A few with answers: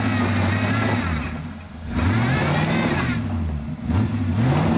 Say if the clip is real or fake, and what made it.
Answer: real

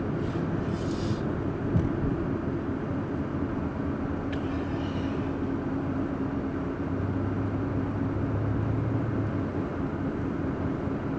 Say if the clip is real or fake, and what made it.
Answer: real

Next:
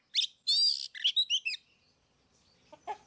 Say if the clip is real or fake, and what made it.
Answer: real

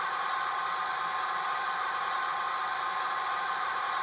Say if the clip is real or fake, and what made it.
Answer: real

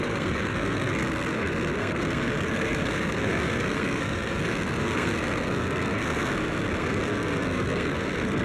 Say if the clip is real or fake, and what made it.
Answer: fake, codec, SNAC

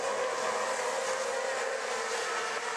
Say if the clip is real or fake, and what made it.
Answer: real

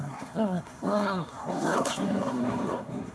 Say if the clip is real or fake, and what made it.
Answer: fake, codec, SNAC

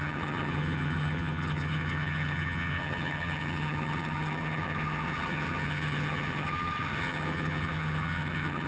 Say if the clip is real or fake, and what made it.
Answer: fake, vocoder, HiFi-GAN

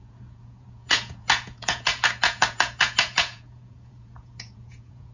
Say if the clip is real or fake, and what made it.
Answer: fake, vocoder, Vocos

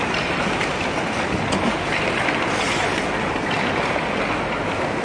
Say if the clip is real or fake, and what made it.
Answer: real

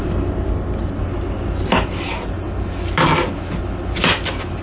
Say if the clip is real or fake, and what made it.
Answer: real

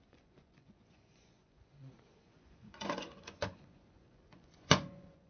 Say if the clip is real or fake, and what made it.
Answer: fake, vocoder, Vocos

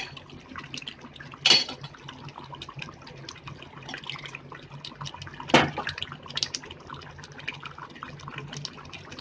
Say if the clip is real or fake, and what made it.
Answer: real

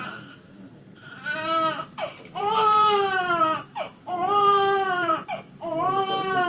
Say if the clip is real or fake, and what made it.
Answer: fake, vocoder, BigVGAN v2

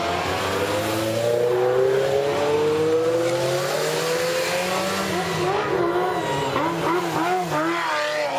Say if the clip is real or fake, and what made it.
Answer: real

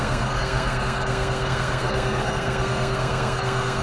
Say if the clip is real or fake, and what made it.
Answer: fake, codec, SNAC